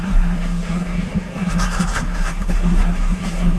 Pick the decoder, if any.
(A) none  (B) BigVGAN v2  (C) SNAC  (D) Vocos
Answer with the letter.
C